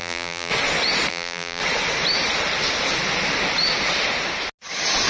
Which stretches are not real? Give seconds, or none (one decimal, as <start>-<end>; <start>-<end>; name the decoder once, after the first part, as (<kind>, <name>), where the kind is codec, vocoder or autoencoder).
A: 0.0-0.5 (vocoder, BigVGAN v2); 1.1-1.6